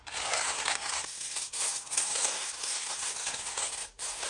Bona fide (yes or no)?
no